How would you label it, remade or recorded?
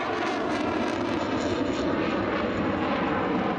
recorded